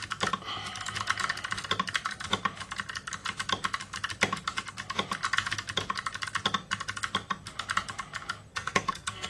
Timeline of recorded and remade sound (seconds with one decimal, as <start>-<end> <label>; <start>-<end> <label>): 0.0-8.5 recorded; 8.5-9.3 remade